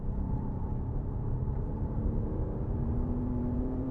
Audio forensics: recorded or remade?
remade